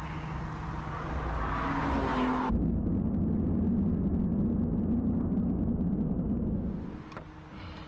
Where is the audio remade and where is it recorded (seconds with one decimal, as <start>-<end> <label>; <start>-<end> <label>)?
0.0-7.9 recorded